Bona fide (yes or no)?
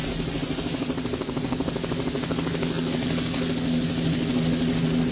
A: yes